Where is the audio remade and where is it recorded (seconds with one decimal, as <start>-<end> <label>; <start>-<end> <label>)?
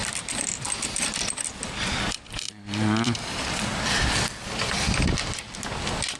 0.0-3.7 remade; 3.7-6.2 recorded